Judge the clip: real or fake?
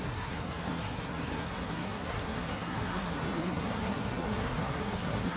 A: fake